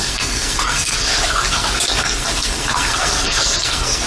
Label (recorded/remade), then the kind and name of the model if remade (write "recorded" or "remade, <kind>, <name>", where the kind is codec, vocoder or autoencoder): remade, codec, SNAC